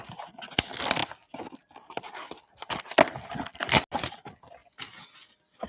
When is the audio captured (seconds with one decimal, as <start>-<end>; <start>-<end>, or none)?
0.0-5.7